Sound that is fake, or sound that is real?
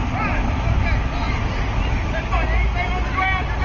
real